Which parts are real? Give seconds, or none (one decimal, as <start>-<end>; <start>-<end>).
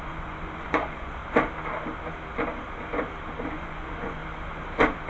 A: 1.2-3.5; 4.2-5.1